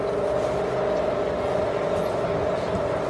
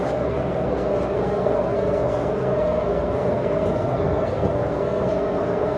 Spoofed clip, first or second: second